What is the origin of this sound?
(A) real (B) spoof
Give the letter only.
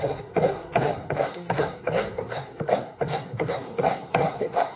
B